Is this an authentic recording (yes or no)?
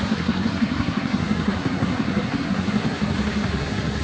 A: no